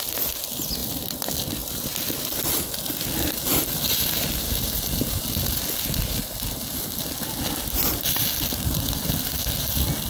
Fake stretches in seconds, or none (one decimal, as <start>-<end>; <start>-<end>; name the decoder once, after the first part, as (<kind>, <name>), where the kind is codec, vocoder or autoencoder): none